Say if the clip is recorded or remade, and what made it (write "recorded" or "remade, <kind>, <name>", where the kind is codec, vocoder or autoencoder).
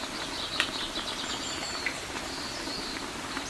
remade, vocoder, BigVGAN v2